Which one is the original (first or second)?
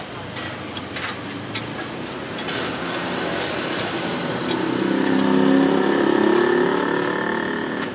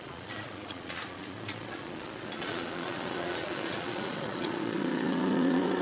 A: first